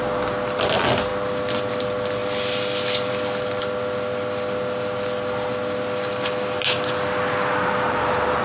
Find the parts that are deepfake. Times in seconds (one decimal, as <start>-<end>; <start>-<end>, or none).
none